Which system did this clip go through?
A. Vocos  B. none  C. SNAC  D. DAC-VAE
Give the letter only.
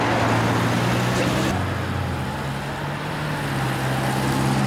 B